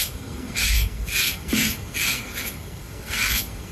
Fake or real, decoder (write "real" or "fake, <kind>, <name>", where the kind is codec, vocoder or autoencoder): fake, codec, SNAC